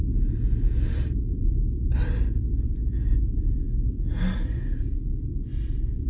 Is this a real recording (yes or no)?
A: yes